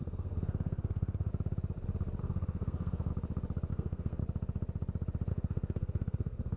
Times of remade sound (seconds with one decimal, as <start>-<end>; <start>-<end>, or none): 0.0-1.3; 2.2-3.1; 3.7-4.2; 5.3-6.6